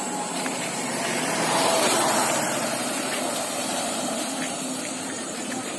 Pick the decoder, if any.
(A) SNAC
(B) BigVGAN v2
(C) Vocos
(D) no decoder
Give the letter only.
B